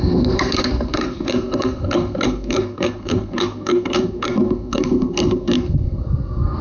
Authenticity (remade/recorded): remade